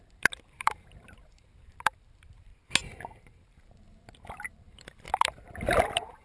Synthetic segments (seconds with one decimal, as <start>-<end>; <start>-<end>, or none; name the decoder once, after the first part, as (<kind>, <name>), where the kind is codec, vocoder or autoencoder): 0.0-2.5 (vocoder, BigVGAN v2); 3.2-6.2